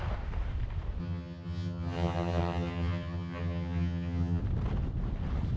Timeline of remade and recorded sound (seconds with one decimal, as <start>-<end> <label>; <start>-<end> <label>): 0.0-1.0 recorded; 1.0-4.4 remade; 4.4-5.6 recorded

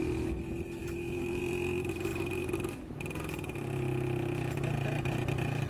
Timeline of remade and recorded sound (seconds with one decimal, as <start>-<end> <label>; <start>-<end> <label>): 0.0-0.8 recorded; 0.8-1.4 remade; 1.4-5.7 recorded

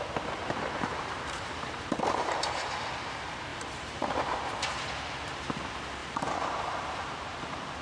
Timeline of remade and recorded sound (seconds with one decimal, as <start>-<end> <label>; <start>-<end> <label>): 0.0-0.4 recorded; 0.4-2.7 remade; 2.7-3.5 recorded; 3.5-5.5 remade; 5.5-6.0 recorded; 6.0-7.8 remade

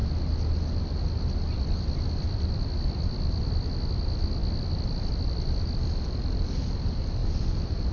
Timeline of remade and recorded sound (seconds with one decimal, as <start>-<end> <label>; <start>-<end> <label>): 0.0-2.1 recorded; 2.1-7.9 remade

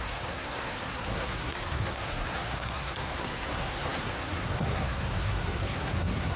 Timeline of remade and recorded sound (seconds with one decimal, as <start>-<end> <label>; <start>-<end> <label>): 0.0-6.4 remade

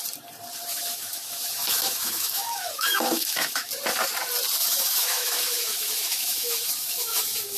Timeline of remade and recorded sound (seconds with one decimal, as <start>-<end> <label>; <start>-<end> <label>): 0.0-0.7 recorded; 0.7-3.7 remade; 3.7-4.6 recorded; 4.6-7.6 remade